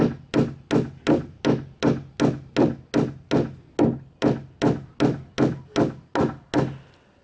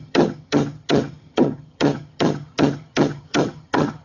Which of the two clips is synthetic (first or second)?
second